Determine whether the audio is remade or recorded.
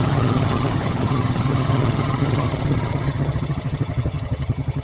remade